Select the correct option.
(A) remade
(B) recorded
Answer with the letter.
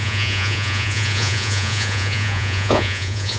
A